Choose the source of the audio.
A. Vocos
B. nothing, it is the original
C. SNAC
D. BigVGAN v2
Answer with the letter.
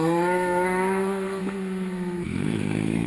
C